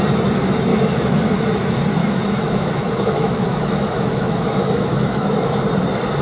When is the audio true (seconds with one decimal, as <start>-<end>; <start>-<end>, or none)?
0.0-0.7; 1.3-2.0; 5.6-6.2

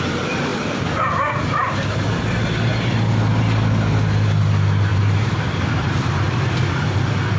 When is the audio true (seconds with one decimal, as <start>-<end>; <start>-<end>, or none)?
0.0-4.9; 6.4-7.4

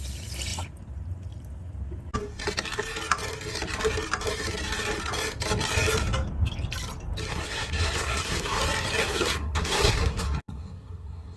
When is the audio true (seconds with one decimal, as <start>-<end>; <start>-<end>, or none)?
0.0-7.3; 8.6-9.0

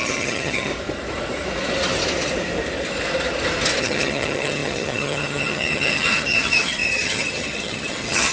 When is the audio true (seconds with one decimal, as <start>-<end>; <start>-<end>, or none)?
0.7-3.8

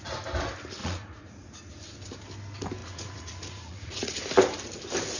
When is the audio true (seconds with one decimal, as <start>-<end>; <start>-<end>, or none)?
0.0-0.8; 1.6-2.8; 4.1-5.2

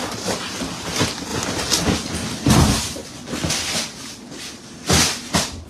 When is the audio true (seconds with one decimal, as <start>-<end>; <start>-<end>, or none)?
3.0-4.5